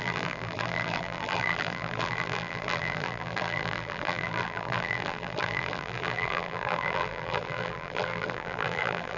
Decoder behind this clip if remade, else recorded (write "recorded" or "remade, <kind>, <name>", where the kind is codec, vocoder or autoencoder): remade, vocoder, BigVGAN v2